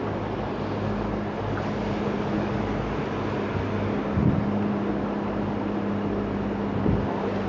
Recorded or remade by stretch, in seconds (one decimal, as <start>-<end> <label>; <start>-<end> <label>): 0.0-7.5 recorded